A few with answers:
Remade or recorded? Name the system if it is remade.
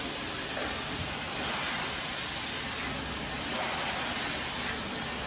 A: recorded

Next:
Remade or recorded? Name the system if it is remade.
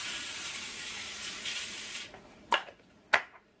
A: remade, vocoder, Vocos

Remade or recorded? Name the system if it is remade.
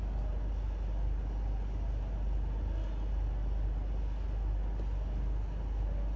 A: recorded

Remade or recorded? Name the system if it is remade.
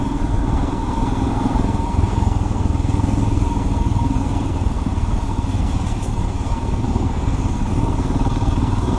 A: remade, codec, SNAC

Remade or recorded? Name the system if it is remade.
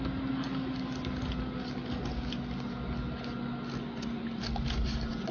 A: recorded